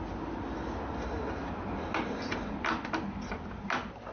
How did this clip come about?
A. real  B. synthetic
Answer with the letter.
A